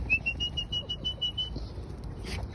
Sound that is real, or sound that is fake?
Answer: real